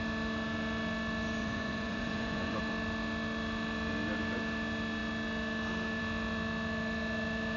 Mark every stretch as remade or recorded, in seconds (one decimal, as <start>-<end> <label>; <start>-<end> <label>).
0.0-1.4 recorded; 1.4-2.6 remade; 2.6-7.6 recorded

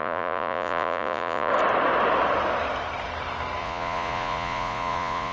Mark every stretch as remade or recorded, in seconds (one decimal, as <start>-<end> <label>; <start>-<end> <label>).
0.0-1.5 remade; 1.5-3.6 recorded; 3.6-5.3 remade

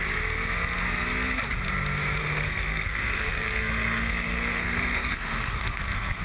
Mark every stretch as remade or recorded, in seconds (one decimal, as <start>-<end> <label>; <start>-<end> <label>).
0.0-2.2 recorded; 2.2-6.2 remade

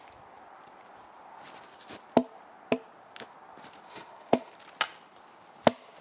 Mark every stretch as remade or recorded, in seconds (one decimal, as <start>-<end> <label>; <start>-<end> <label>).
0.0-3.9 recorded; 3.9-4.5 remade; 4.5-6.0 recorded

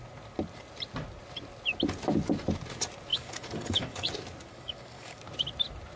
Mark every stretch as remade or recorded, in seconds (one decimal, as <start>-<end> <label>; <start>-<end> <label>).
0.0-3.1 recorded; 3.1-4.1 remade; 4.1-4.5 recorded; 4.5-5.2 remade; 5.2-6.0 recorded

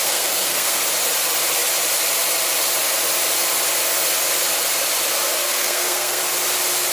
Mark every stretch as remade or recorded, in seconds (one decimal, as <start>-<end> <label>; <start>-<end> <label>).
0.0-0.8 remade; 0.8-5.4 recorded; 5.4-6.2 remade; 6.2-6.9 recorded